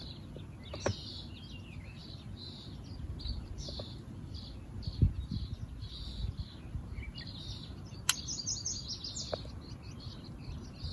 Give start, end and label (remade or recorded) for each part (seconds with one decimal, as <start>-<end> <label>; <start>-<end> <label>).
0.0-10.9 recorded